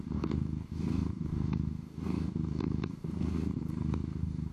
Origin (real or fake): fake